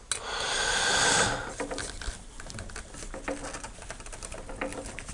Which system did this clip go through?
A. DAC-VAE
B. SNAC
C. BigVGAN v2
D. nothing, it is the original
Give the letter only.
D